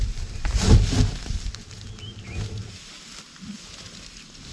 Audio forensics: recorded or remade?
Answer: recorded